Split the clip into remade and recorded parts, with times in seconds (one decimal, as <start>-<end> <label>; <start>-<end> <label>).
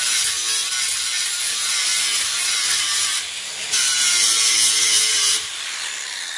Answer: 0.0-5.1 recorded; 5.1-5.9 remade; 5.9-6.4 recorded